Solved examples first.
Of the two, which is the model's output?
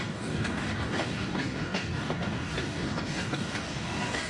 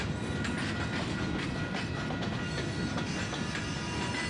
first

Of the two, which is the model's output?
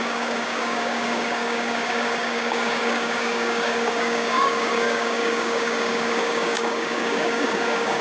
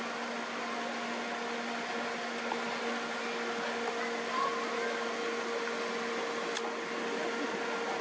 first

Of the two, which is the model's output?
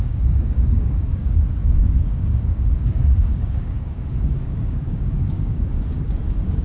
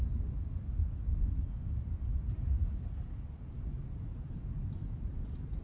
first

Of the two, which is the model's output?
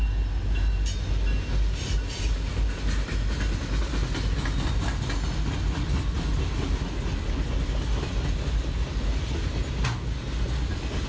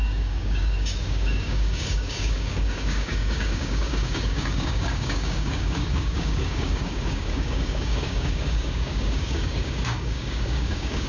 second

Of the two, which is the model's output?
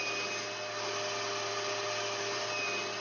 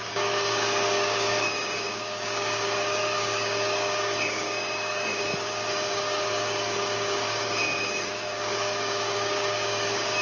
second